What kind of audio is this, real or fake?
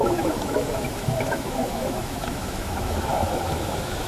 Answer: fake